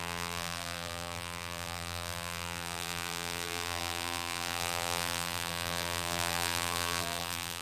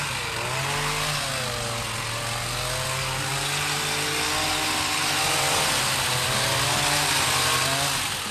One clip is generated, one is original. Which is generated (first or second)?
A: first